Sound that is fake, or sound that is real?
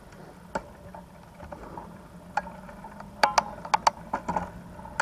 real